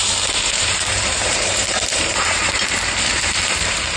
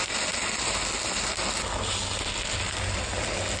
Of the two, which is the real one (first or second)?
second